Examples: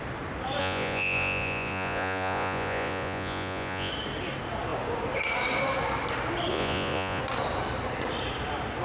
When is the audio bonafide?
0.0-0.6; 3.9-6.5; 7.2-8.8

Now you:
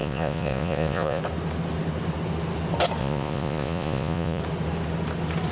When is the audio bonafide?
1.2-3.0; 4.4-5.5